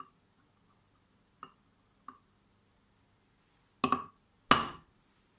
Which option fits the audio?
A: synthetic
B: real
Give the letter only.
B